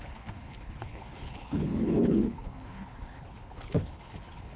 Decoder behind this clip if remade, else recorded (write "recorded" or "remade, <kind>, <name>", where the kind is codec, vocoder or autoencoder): remade, codec, HILCodec